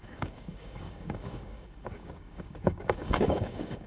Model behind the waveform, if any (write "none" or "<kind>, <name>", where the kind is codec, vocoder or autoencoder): codec, DAC